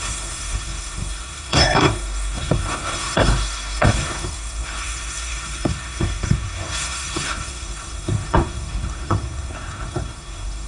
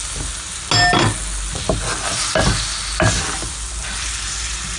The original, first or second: second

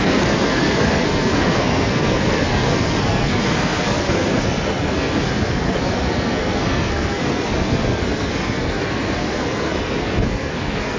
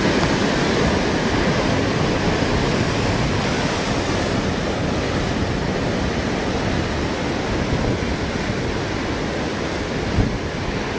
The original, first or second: second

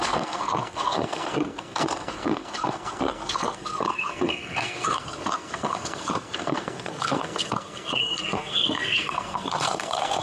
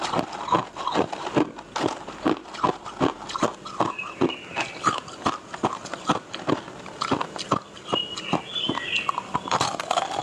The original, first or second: second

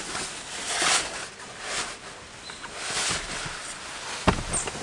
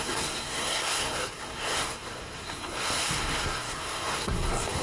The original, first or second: first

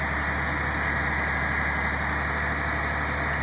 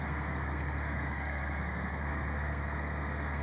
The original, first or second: first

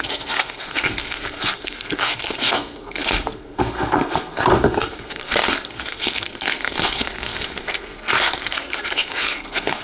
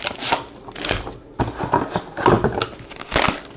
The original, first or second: second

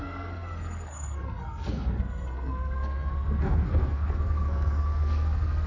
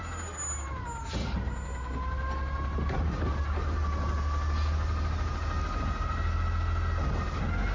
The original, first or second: second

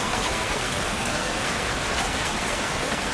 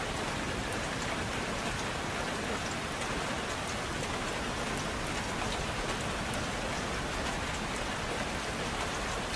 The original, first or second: second